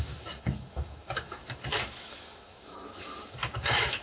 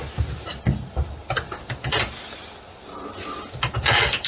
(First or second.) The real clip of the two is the second